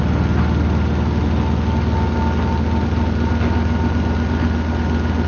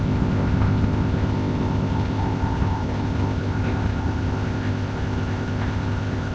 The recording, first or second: first